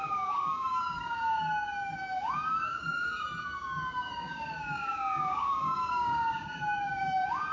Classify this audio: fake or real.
fake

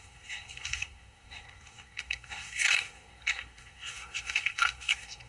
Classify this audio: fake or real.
fake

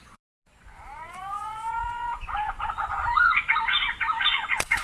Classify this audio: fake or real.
fake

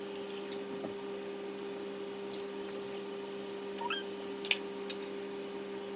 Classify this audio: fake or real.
real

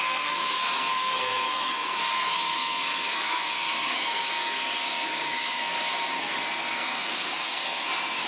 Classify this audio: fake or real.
fake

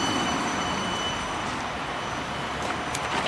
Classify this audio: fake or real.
real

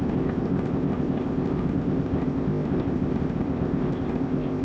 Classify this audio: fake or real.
fake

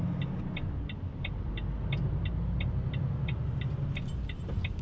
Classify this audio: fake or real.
real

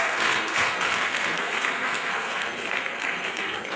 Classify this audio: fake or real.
fake